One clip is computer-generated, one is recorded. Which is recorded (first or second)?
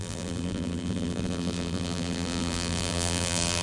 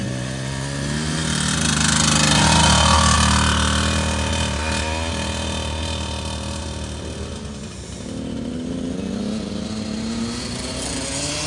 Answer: second